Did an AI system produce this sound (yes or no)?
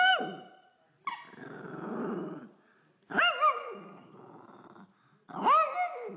no